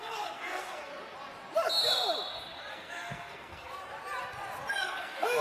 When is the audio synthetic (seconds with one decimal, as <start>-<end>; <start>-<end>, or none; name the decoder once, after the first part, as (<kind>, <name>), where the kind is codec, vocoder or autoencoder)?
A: 0.0-0.9 (codec, SNAC); 2.7-3.9; 4.7-5.4